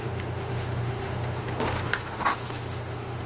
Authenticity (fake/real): fake